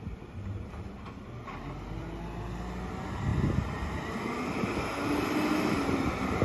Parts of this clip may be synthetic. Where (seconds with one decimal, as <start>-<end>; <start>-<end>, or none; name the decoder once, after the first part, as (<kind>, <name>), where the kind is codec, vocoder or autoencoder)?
none